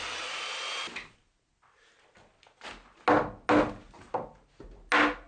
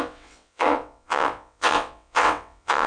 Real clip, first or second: first